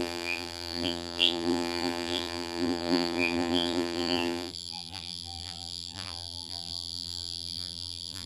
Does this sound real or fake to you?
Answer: fake